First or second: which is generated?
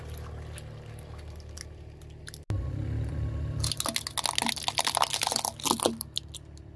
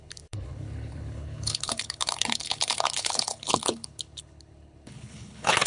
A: second